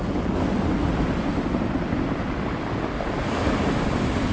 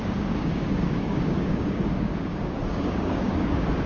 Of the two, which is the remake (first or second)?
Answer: second